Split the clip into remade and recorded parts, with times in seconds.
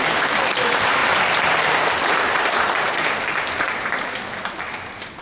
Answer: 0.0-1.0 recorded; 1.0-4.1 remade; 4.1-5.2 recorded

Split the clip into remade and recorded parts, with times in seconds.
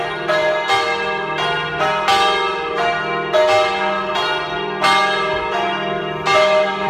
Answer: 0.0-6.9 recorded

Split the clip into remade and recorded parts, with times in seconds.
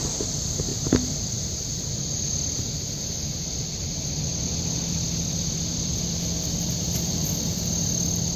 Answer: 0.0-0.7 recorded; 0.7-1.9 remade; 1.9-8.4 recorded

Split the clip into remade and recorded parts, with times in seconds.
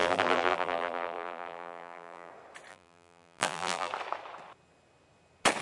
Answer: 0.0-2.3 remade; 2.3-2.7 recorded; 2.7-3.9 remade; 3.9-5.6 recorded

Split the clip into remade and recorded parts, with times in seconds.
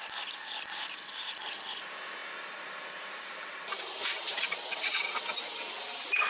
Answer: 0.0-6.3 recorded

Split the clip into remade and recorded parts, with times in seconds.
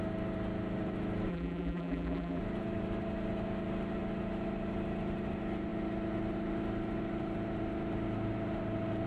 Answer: 0.0-1.3 recorded; 1.3-2.4 remade; 2.4-9.1 recorded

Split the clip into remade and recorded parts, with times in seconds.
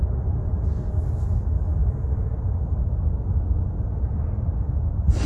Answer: 0.0-5.3 recorded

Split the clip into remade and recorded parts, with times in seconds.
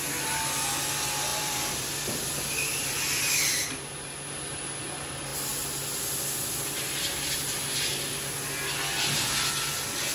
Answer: 0.0-1.3 recorded; 1.3-2.1 remade; 2.1-10.1 recorded